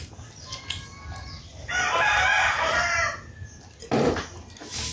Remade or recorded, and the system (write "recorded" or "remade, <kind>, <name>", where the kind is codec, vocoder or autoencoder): recorded